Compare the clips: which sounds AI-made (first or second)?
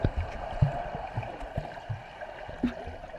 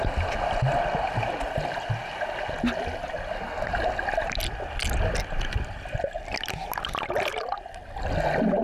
first